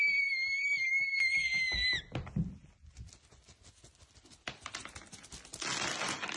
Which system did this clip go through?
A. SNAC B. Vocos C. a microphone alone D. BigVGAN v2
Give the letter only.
C